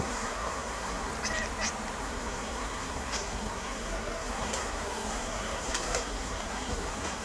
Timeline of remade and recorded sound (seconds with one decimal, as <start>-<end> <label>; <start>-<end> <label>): 0.0-1.1 remade; 1.1-2.0 recorded; 2.0-7.2 remade

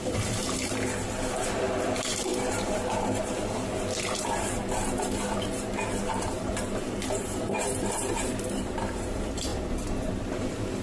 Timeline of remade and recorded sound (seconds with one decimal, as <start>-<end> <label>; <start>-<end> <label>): 0.0-10.8 remade

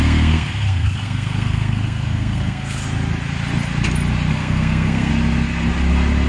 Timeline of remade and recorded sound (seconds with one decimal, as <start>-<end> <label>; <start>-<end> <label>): 0.0-2.8 remade; 2.8-4.3 recorded; 4.3-5.1 remade; 5.1-6.3 recorded

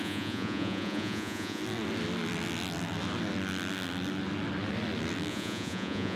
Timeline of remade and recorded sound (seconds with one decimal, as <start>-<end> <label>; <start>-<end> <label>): 0.0-1.6 remade; 1.6-5.3 recorded; 5.3-6.2 remade